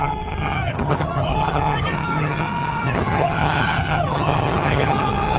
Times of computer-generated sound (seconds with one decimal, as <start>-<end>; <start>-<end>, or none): 0.0-5.4